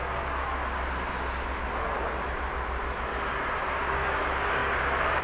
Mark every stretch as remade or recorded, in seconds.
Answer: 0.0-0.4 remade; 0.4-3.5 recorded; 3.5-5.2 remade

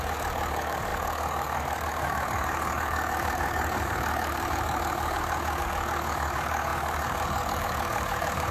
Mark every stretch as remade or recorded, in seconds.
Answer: 0.0-8.5 remade

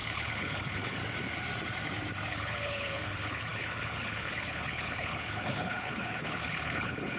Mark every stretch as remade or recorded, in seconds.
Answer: 0.0-1.0 remade; 1.0-2.3 recorded; 2.3-7.2 remade